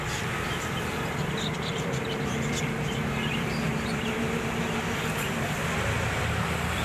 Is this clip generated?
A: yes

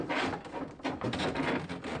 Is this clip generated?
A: no